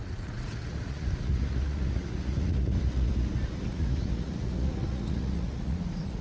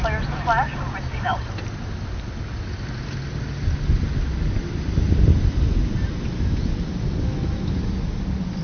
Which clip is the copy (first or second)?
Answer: first